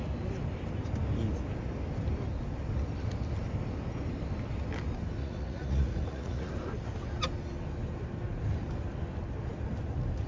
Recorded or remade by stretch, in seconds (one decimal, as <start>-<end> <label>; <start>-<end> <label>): 0.0-5.2 recorded; 5.2-6.5 remade; 6.5-10.3 recorded

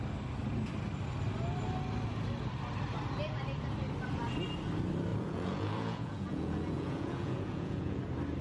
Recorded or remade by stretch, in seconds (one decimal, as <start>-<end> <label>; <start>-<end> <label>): 0.0-5.1 recorded; 5.1-8.0 remade; 8.0-8.4 recorded

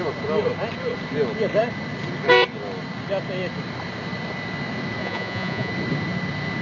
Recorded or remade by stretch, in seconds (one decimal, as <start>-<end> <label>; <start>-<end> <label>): 0.0-5.0 recorded; 5.0-5.7 remade; 5.7-6.6 recorded

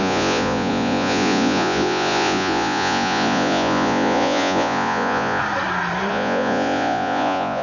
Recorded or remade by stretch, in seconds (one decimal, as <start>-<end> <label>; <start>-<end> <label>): 0.0-5.4 remade; 5.4-6.1 recorded; 6.1-7.6 remade

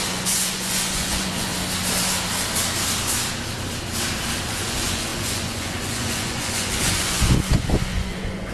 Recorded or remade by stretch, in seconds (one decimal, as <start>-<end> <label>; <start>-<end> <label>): 0.0-1.5 remade; 1.5-4.5 recorded; 4.5-8.5 remade